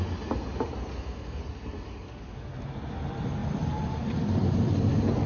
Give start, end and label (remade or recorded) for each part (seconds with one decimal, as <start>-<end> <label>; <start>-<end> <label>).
0.0-0.9 recorded; 0.9-1.4 remade; 1.4-5.3 recorded